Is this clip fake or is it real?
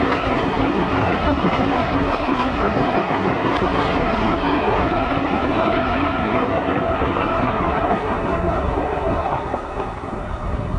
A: fake